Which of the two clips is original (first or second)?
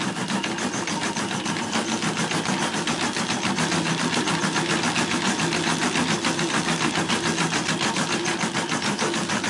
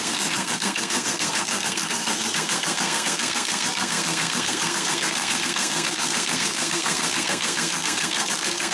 first